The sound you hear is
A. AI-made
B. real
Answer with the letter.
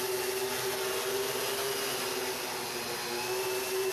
B